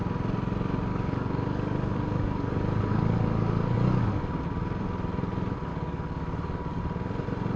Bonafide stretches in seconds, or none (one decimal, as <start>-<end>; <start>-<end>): 0.0-0.9; 4.3-5.7; 6.8-7.6